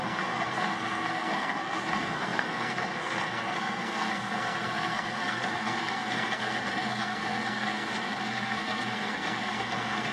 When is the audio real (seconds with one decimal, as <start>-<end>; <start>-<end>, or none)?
none